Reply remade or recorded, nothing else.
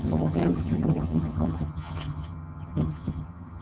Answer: remade